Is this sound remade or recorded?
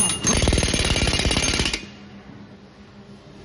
recorded